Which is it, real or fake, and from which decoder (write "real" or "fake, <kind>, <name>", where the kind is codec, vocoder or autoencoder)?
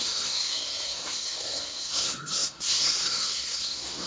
fake, codec, SNAC